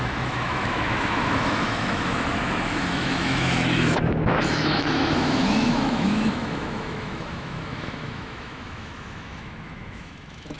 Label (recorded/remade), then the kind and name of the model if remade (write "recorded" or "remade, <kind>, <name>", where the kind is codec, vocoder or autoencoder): remade, autoencoder, DAC-VAE